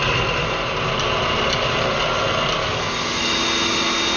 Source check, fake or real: real